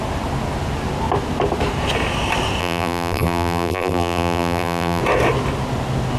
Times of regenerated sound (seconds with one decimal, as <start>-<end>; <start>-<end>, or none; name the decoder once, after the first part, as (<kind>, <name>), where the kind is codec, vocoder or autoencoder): 2.6-5.0 (vocoder, BigVGAN v2)